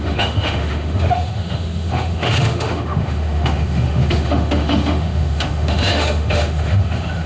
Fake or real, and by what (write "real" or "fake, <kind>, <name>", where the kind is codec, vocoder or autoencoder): fake, autoencoder, DAC-VAE